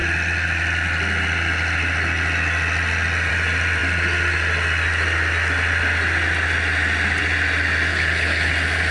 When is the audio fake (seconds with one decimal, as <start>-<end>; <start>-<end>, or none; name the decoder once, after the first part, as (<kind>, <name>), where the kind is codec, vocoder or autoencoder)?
7.9-8.5 (codec, HILCodec)